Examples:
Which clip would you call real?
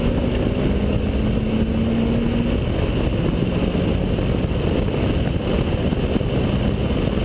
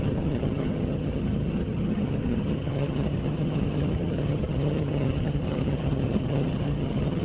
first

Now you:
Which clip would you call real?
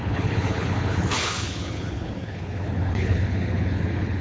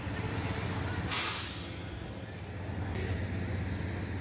second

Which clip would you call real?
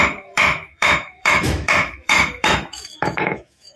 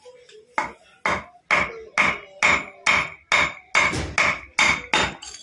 second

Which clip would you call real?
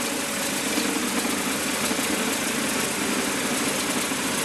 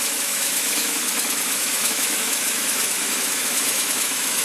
first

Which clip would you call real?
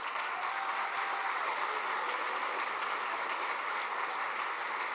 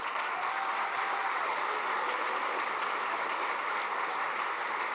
first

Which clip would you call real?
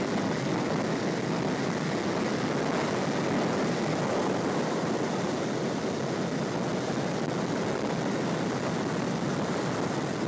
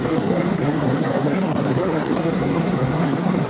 first